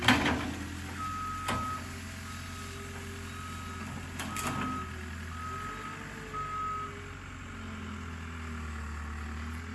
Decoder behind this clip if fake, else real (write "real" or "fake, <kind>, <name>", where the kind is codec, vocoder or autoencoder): real